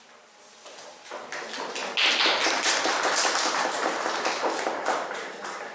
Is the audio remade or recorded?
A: recorded